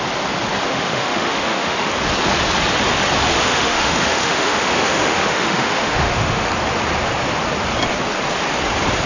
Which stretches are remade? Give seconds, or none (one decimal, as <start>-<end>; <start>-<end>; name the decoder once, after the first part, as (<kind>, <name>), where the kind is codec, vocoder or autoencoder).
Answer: 0.7-1.9 (autoencoder, DAC-VAE); 3.3-6.5